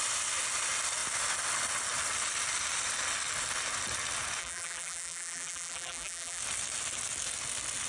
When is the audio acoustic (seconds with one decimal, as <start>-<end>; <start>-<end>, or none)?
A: 0.0-4.4; 6.4-7.9